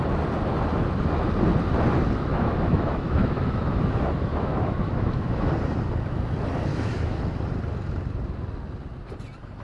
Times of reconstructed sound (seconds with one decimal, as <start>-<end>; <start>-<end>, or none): 2.3-5.5; 6.7-7.2